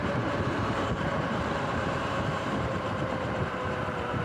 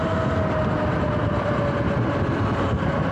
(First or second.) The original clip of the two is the second